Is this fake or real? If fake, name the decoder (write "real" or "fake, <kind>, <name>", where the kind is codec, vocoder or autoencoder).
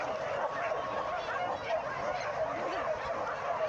real